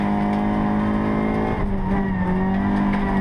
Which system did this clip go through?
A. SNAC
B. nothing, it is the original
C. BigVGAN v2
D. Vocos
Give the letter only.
B